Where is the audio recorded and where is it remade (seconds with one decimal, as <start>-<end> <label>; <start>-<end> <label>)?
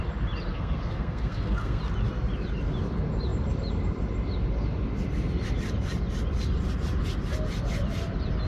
0.0-0.5 recorded; 0.5-1.8 remade; 1.8-8.5 recorded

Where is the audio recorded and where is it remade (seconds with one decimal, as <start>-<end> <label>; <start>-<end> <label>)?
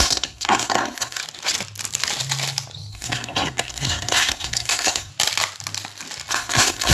0.0-1.2 remade; 1.2-2.9 recorded; 2.9-5.1 remade; 5.1-6.3 recorded; 6.3-6.9 remade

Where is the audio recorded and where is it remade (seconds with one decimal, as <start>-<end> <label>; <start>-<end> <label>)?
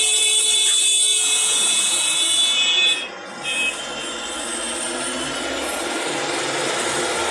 0.0-1.1 recorded; 1.1-2.1 remade; 2.1-7.3 recorded